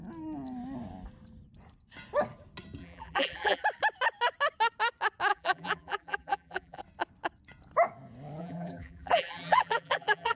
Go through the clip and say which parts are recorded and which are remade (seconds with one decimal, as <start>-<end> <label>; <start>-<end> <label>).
0.0-2.8 recorded; 2.8-3.6 remade; 3.6-5.3 recorded; 5.3-6.8 remade; 6.8-8.4 recorded; 8.4-10.4 remade